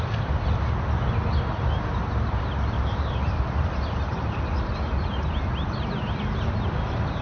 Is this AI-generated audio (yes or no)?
no